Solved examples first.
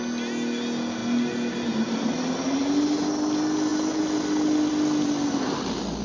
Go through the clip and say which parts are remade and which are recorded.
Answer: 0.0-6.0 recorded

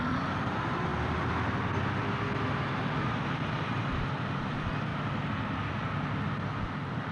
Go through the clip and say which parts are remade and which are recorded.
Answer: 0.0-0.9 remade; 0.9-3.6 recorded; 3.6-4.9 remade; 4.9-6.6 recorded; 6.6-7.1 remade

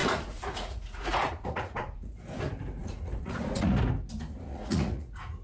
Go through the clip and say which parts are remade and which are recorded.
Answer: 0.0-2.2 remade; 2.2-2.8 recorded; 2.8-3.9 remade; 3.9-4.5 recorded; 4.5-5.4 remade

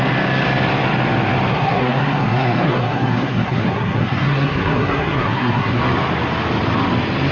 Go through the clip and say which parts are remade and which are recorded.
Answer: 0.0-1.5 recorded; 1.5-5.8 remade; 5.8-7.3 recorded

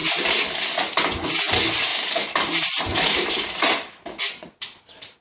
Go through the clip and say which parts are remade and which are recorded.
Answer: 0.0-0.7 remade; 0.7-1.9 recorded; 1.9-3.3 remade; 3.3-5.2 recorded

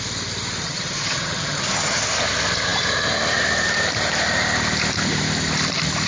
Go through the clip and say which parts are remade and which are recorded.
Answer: 0.0-0.6 recorded; 0.6-2.0 remade; 2.0-6.1 recorded

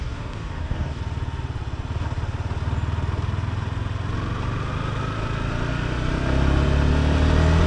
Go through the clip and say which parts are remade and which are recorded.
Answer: 0.0-1.0 remade; 1.0-7.7 recorded